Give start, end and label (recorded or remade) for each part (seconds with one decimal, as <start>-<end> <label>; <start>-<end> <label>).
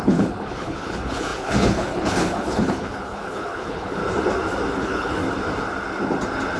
0.0-4.0 remade; 4.0-4.7 recorded; 4.7-5.2 remade; 5.2-6.6 recorded